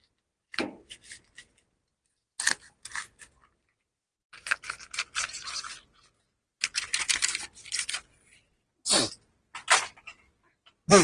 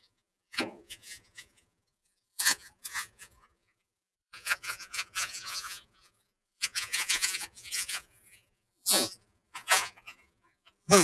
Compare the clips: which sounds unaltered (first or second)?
first